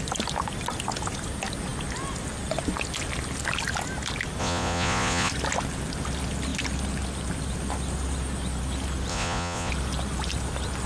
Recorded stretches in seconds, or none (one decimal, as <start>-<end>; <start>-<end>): 0.0-4.4; 5.3-9.1; 9.7-10.9